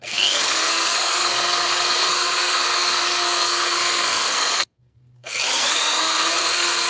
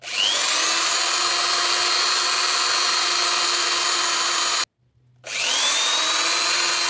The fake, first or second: first